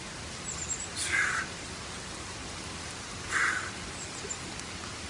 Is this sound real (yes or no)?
yes